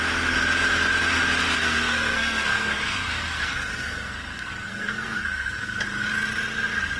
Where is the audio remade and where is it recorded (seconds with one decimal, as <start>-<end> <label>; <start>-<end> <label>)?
0.0-1.6 recorded; 1.6-5.8 remade; 5.8-7.0 recorded